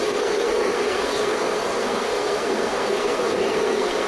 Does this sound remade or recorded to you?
remade